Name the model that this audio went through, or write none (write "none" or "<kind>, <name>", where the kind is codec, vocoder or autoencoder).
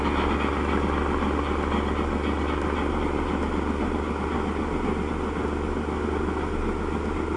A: none